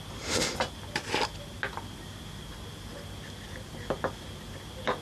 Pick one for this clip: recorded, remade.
recorded